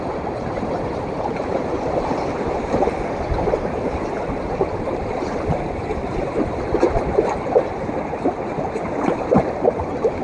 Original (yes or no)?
no